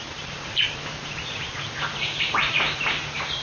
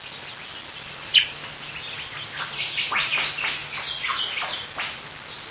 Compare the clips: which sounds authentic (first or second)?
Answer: second